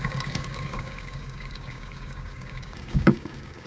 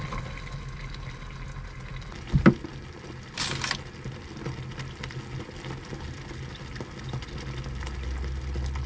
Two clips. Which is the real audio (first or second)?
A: second